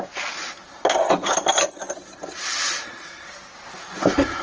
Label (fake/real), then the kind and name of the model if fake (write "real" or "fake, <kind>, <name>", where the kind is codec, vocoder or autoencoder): real